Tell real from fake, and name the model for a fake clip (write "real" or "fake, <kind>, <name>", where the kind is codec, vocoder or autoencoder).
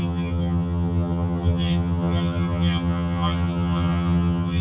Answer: fake, vocoder, HiFi-GAN